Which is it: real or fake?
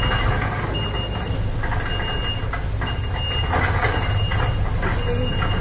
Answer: real